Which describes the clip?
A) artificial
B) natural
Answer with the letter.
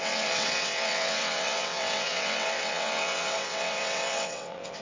A